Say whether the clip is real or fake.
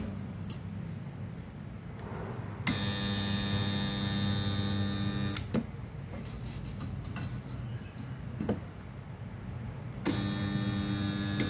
real